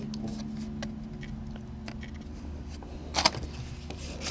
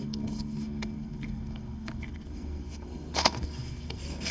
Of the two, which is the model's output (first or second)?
second